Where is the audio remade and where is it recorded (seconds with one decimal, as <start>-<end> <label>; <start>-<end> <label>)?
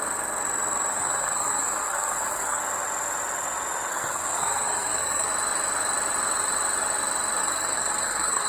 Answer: 0.0-0.9 recorded; 0.9-2.6 remade; 2.6-3.9 recorded; 3.9-5.3 remade; 5.3-7.4 recorded; 7.4-8.5 remade